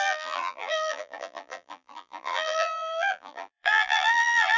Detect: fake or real fake